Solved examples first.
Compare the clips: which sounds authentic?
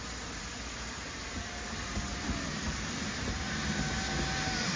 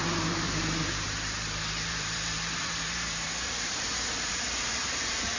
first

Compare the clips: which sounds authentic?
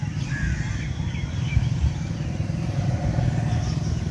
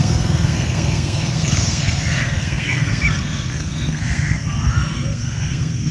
first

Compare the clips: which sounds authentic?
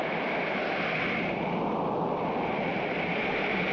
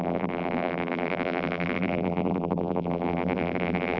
first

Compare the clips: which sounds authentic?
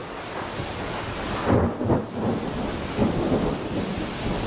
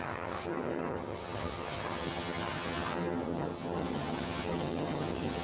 first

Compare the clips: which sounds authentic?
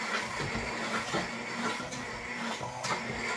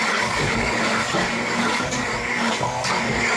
first